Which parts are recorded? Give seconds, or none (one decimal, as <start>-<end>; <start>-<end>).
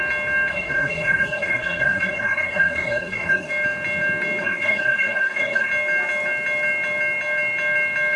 0.0-0.5; 3.5-4.4; 5.7-8.2